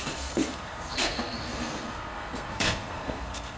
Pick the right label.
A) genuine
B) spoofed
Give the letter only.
B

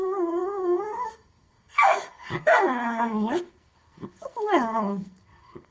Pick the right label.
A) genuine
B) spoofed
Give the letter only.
B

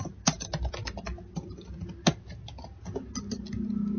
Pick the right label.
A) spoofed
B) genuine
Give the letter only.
B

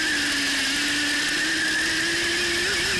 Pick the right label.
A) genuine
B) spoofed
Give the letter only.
A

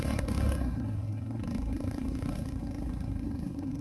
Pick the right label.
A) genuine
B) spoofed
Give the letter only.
B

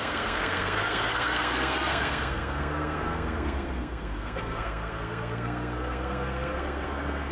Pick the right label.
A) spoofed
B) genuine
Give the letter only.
A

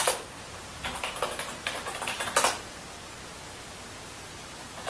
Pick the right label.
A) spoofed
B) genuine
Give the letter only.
B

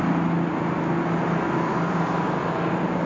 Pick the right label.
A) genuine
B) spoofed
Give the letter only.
A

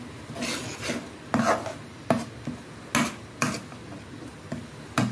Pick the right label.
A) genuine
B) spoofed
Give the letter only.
A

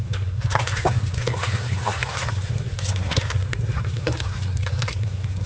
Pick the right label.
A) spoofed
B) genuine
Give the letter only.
A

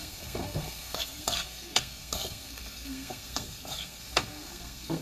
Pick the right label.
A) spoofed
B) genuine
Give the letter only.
A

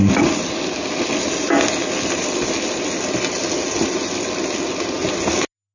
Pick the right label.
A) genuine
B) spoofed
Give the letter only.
A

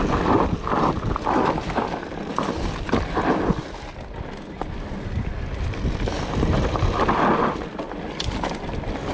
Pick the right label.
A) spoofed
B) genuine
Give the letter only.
B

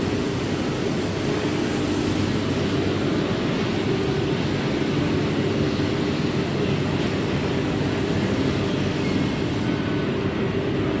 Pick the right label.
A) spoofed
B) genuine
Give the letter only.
B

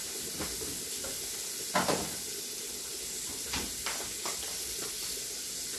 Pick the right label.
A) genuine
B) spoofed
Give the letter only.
A